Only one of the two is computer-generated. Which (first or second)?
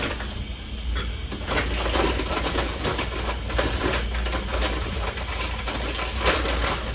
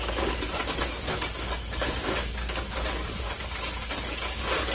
second